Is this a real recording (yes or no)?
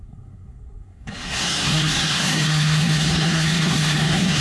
no